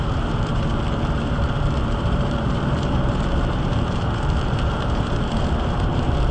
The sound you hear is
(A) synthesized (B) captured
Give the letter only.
A